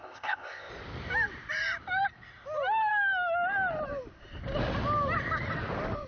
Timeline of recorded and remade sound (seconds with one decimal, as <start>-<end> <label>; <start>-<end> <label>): 0.0-0.7 remade; 0.7-6.1 recorded